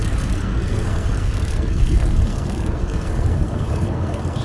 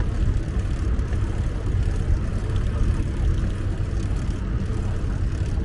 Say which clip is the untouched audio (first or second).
second